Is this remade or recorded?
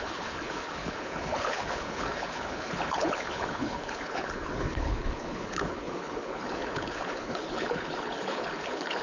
remade